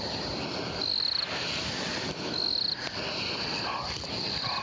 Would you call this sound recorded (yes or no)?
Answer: yes